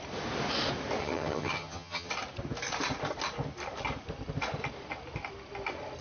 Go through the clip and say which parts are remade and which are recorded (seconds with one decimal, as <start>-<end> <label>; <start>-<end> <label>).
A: 0.0-1.0 recorded; 1.0-2.1 remade; 2.1-6.0 recorded